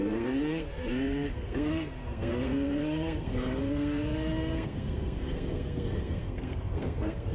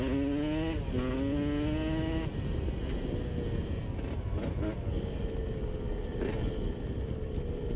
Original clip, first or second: second